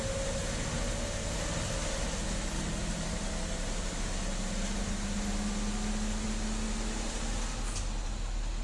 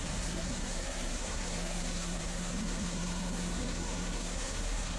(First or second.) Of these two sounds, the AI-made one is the second